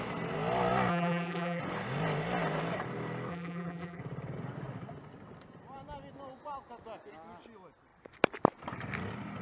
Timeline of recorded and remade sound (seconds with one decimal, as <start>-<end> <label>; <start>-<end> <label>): 0.0-0.9 recorded; 0.9-1.6 remade; 1.6-3.3 recorded; 3.3-4.0 remade; 4.0-9.4 recorded